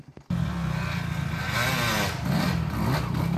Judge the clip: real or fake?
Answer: real